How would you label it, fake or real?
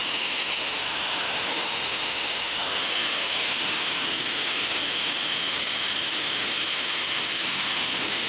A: fake